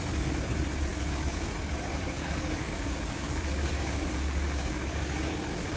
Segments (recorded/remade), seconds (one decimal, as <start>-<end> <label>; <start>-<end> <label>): 0.0-0.9 recorded; 0.9-1.5 remade; 1.5-1.9 recorded; 1.9-5.8 remade